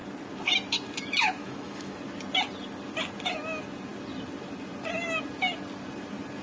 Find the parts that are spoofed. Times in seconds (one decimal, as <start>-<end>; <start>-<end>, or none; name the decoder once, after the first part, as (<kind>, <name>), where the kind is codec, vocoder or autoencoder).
1.4-2.0 (autoencoder, DAC-VAE)